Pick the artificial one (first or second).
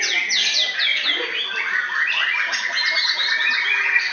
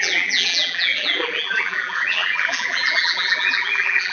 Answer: second